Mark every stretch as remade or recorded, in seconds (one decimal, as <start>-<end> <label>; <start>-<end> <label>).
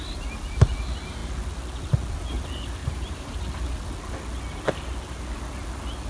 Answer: 0.0-2.8 recorded; 2.8-3.4 remade; 3.4-6.1 recorded